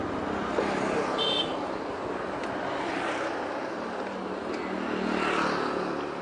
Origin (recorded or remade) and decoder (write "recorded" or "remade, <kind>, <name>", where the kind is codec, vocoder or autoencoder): recorded